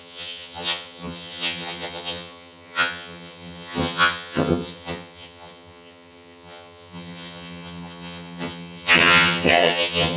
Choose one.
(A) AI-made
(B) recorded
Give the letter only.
A